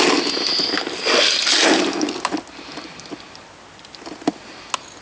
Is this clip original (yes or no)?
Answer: yes